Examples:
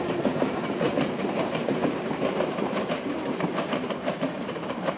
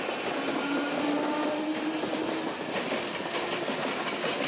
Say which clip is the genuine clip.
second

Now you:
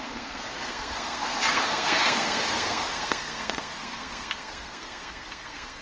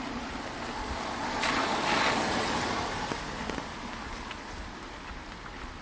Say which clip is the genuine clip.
second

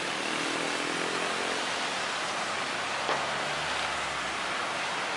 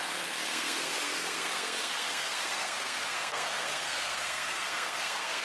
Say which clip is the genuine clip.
first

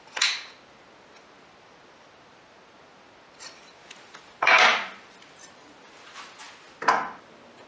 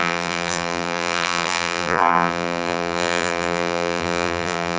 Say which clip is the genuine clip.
first